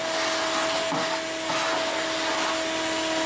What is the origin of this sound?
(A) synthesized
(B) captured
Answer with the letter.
B